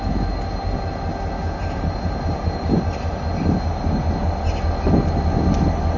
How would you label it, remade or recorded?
recorded